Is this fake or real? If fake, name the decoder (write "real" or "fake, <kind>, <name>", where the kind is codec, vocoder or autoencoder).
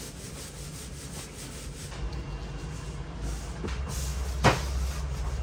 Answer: real